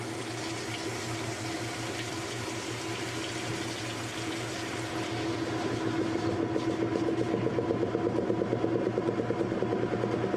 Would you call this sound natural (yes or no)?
yes